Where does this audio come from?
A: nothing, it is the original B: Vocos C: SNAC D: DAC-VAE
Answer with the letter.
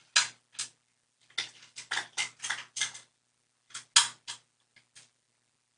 A